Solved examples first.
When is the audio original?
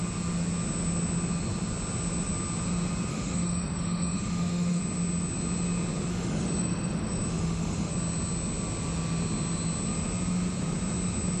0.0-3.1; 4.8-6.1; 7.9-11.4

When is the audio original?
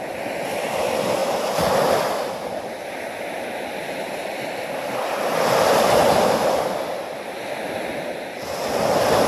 0.0-9.3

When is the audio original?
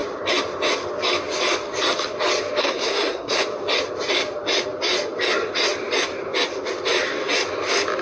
0.0-2.6; 3.4-8.0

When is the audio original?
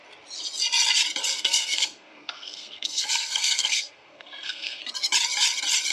0.0-1.3; 4.8-5.9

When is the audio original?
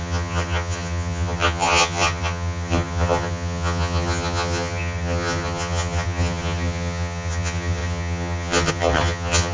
none